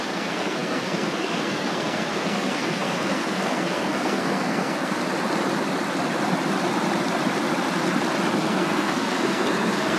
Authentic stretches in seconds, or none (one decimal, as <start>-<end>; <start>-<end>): 5.0-8.3